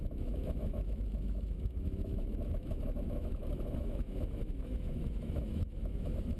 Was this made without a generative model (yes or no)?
no